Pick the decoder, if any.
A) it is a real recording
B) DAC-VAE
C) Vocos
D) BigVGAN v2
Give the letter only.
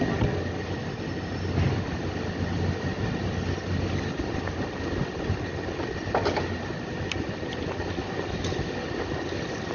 A